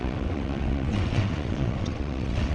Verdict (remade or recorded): remade